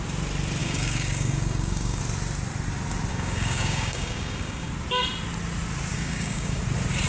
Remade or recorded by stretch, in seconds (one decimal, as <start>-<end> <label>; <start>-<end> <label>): 0.0-0.6 recorded; 0.6-2.0 remade; 2.0-3.1 recorded; 3.1-4.7 remade; 4.7-5.9 recorded; 5.9-6.6 remade; 6.6-7.1 recorded